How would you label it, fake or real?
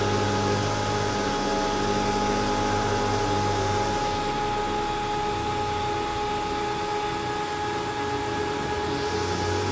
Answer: real